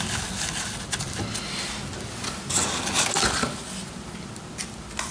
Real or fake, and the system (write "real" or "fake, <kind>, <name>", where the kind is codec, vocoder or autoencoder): real